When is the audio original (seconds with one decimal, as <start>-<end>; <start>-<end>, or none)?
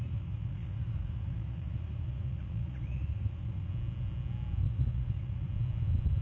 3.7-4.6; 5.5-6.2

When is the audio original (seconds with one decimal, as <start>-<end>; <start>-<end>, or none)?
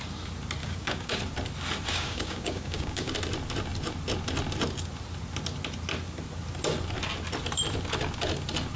0.0-0.6; 1.2-1.9; 3.1-8.8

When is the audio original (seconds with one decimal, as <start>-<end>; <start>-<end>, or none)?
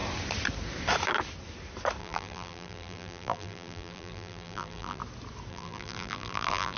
0.0-2.0; 5.0-5.5